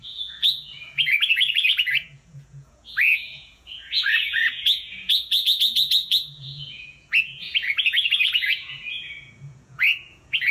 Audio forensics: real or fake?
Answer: fake